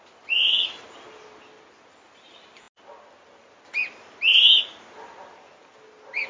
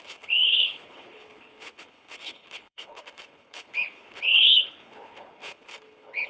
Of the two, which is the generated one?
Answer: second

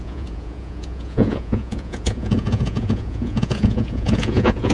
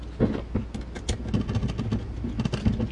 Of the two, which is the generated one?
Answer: first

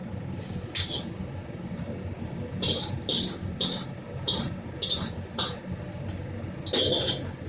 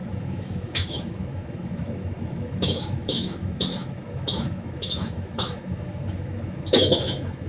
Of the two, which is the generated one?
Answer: second